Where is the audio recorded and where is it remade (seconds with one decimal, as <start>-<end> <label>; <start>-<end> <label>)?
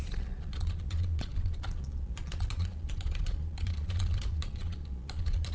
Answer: 0.0-5.5 remade